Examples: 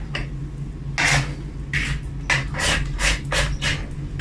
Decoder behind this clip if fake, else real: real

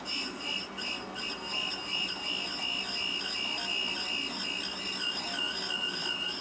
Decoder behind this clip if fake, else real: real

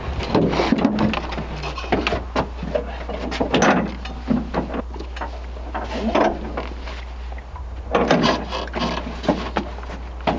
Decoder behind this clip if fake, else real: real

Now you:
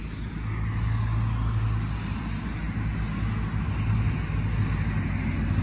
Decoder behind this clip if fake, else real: real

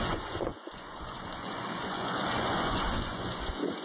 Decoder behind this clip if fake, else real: fake, vocoder, Vocos